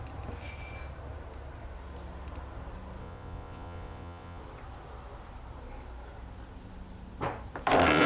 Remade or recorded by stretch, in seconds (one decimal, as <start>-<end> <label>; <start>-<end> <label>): 0.0-3.0 recorded; 3.0-4.4 remade; 4.4-8.1 recorded